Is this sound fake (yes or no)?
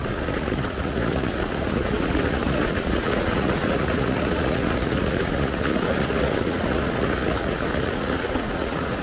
yes